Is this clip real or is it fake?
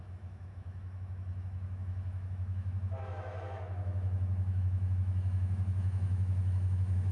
fake